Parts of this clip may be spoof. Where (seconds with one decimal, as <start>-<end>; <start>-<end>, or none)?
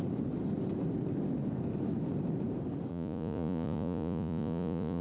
2.9-5.0